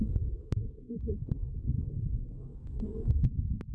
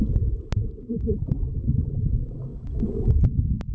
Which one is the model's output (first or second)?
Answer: first